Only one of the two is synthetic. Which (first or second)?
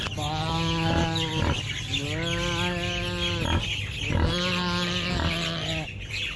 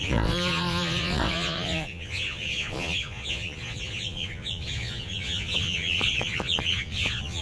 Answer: second